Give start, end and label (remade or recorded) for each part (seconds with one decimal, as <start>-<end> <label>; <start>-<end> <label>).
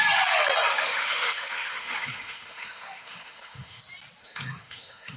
0.0-0.7 recorded; 0.7-3.8 remade; 3.8-4.2 recorded; 4.2-5.2 remade